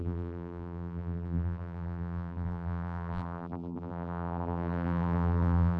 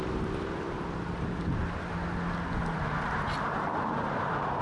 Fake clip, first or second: first